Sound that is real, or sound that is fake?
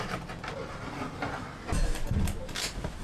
real